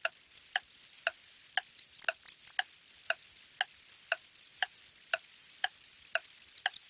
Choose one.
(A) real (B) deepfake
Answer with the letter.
A